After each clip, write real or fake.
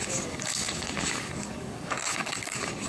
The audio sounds fake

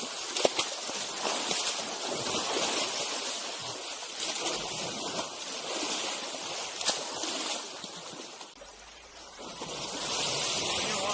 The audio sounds real